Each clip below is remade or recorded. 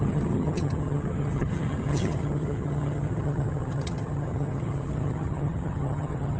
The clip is remade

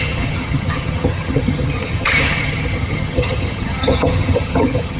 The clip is remade